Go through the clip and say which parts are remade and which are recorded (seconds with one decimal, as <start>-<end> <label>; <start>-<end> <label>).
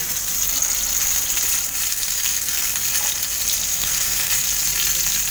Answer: 0.0-1.9 recorded; 1.9-2.9 remade; 2.9-3.7 recorded; 3.7-4.3 remade; 4.3-5.3 recorded